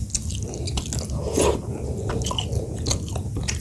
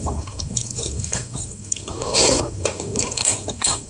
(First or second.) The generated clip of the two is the second